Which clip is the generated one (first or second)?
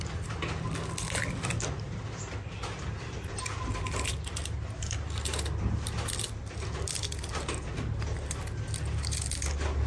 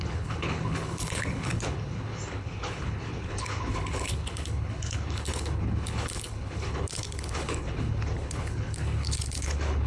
second